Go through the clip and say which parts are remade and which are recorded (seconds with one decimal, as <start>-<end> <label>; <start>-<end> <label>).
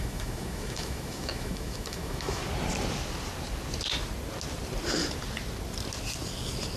0.0-2.4 remade; 2.4-6.8 recorded